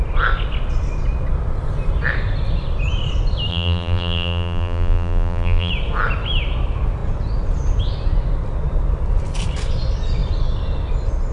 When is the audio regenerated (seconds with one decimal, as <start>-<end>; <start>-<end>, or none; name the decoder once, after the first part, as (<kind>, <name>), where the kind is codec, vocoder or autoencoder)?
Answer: 3.5-5.7 (vocoder, BigVGAN v2)

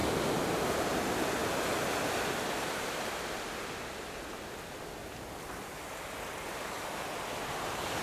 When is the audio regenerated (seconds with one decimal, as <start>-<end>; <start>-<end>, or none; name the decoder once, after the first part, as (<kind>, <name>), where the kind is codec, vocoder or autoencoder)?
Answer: none

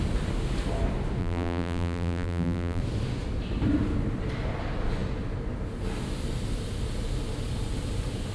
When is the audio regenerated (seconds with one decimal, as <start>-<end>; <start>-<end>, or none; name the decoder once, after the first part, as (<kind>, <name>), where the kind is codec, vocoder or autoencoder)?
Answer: 1.2-2.8 (vocoder, BigVGAN v2)

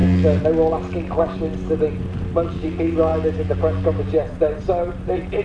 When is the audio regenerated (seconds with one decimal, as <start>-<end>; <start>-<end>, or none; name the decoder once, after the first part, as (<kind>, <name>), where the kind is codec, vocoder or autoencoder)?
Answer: none

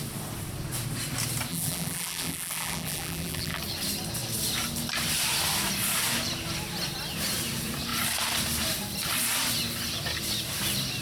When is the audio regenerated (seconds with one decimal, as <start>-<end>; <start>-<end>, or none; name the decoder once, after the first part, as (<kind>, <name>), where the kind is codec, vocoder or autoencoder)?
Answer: 1.5-3.6 (vocoder, BigVGAN v2)

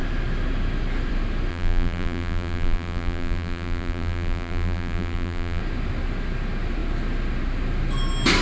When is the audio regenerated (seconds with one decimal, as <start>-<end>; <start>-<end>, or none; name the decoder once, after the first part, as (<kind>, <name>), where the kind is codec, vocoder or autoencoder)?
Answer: 1.5-5.6 (vocoder, BigVGAN v2)

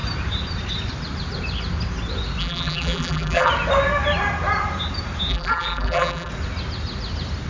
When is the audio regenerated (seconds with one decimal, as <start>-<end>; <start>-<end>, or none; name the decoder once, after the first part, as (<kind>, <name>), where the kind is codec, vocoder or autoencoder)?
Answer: 2.4-3.5 (vocoder, BigVGAN v2); 5.3-6.3

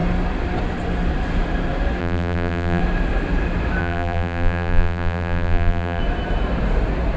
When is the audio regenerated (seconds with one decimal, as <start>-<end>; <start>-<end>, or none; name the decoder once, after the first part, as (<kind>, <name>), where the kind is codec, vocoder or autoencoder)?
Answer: 2.0-2.8 (vocoder, BigVGAN v2); 3.8-6.0